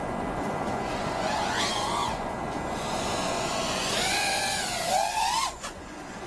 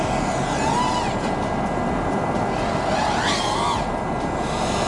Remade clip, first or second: first